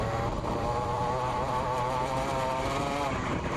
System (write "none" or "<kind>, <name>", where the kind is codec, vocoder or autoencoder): vocoder, BigVGAN v2